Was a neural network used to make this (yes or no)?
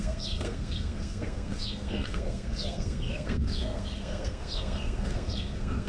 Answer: yes